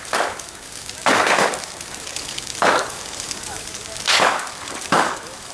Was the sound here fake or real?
fake